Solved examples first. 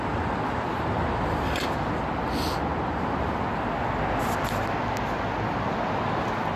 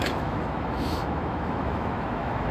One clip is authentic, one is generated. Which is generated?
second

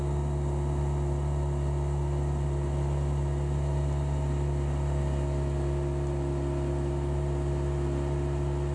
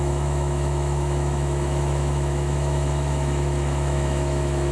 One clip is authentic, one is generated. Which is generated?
second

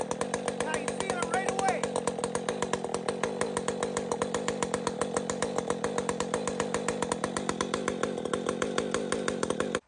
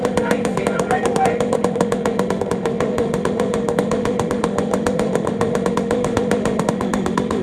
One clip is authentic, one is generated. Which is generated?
second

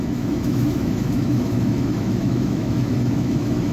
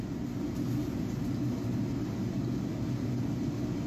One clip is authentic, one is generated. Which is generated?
first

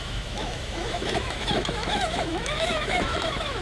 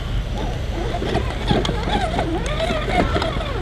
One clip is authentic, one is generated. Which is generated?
first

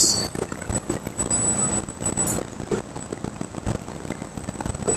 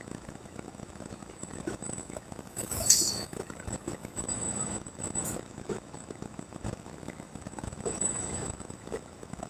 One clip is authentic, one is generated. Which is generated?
second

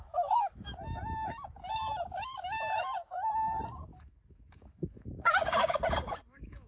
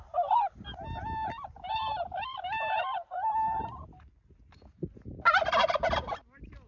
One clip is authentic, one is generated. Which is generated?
first